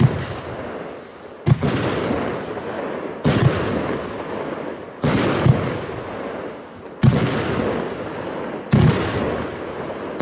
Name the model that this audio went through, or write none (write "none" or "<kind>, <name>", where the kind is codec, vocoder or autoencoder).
none